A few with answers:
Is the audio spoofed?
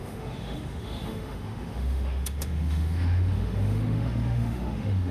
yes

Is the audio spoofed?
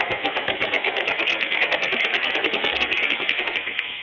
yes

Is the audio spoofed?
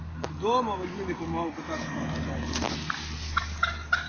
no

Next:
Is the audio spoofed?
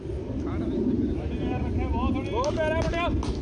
no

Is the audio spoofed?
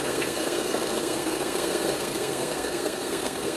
yes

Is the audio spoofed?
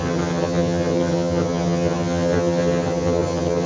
yes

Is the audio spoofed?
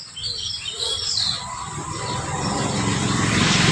yes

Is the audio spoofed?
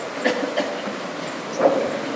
no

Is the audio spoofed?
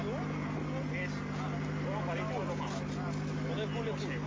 no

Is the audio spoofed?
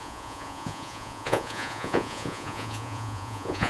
yes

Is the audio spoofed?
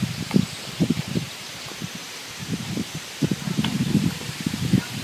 yes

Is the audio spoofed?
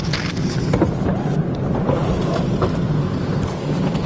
no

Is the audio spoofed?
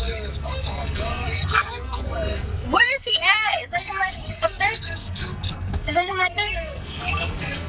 yes